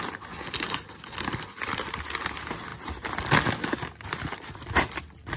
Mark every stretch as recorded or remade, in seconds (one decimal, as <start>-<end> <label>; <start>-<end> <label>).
0.0-5.4 recorded